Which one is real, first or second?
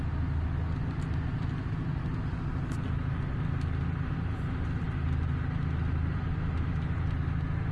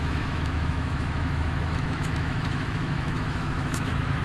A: first